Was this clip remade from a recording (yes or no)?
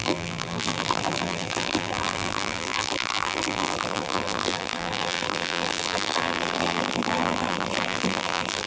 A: yes